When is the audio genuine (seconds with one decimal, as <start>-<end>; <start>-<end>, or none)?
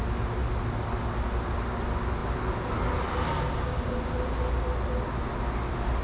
0.0-6.0